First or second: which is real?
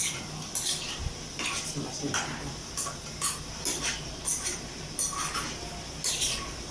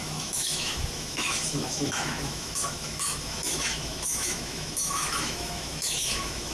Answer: first